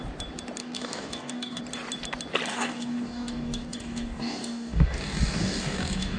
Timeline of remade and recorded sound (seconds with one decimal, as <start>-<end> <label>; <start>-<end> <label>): 0.0-0.6 recorded; 0.6-1.6 remade; 1.6-2.5 recorded; 2.5-6.2 remade